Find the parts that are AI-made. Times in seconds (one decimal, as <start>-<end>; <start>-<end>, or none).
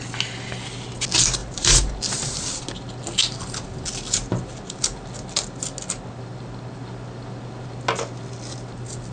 1.4-2.1